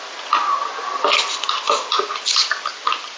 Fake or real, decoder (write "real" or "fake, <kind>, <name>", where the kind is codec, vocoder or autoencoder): real